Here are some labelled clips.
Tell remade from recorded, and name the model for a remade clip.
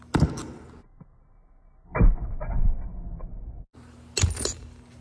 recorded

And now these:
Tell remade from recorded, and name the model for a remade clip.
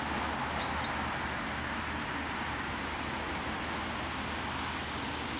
recorded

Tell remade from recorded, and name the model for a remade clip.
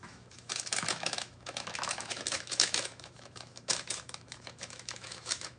remade, autoencoder, DAC-VAE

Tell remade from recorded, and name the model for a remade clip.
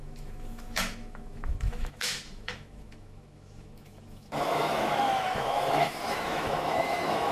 remade, autoencoder, DAC-VAE